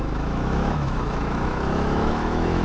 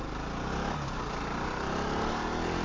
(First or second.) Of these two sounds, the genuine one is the second